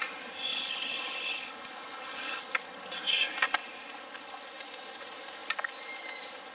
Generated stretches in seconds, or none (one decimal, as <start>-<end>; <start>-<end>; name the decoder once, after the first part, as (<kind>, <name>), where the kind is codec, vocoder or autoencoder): 0.5-2.4 (codec, HILCodec)